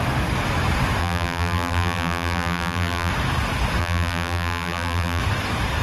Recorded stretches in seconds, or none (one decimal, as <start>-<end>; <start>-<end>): 0.0-1.0; 3.1-3.8; 5.2-5.8